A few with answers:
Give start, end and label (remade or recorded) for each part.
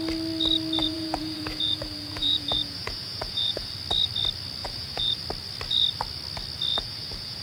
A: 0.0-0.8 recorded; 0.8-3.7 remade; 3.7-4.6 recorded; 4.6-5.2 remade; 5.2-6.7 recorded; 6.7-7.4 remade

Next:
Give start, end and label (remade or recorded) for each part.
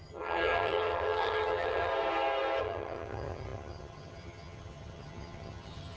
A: 0.0-1.9 remade; 1.9-2.6 recorded; 2.6-6.0 remade